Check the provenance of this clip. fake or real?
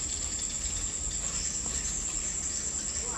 real